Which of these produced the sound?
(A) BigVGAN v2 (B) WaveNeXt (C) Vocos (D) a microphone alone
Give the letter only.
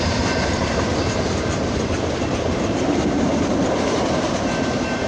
A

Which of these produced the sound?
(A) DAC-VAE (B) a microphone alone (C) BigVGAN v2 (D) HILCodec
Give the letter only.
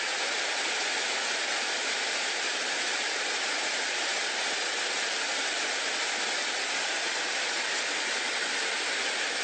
B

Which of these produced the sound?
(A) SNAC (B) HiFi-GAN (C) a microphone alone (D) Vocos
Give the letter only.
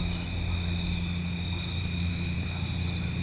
C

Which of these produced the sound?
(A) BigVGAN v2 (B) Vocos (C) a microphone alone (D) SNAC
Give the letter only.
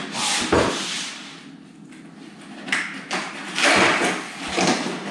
C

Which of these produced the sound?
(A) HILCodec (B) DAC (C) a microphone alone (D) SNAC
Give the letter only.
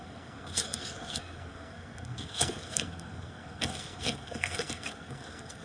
D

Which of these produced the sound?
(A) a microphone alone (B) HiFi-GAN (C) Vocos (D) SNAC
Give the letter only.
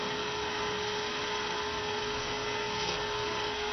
D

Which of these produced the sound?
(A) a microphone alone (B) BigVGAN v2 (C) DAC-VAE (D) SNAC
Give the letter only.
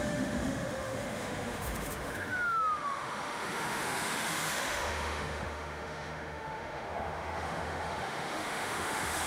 C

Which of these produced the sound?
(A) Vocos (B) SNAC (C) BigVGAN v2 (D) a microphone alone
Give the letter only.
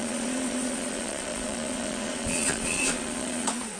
A